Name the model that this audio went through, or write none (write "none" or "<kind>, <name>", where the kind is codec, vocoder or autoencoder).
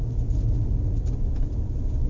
none